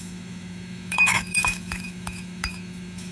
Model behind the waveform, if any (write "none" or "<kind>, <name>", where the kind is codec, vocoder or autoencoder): autoencoder, DAC-VAE